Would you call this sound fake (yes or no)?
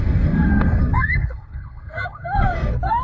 yes